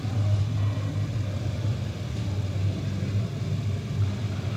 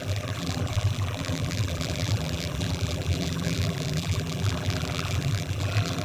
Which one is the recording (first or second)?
first